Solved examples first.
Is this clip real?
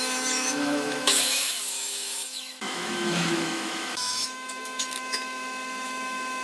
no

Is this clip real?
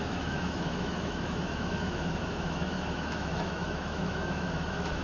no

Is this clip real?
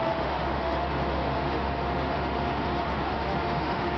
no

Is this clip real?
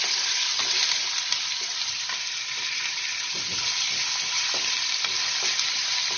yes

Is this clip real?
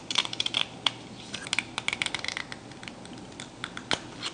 yes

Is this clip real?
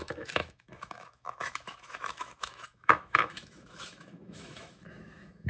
no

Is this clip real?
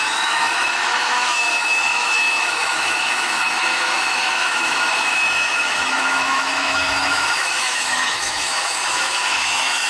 no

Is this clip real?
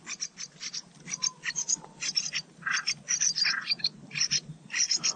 yes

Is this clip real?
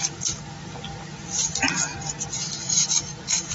yes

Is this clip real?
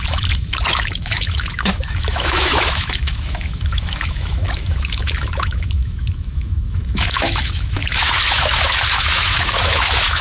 no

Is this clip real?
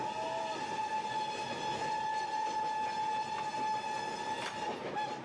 yes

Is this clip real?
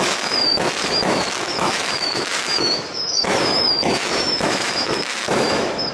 no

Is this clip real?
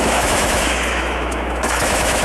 no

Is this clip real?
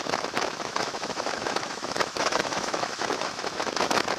no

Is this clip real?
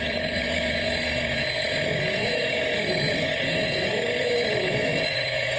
no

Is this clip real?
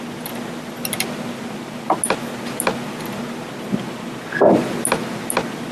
yes